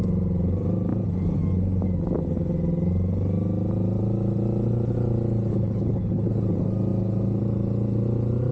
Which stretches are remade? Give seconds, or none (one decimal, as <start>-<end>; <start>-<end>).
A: 5.5-6.3